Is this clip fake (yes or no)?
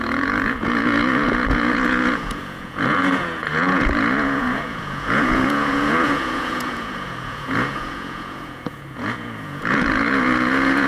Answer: yes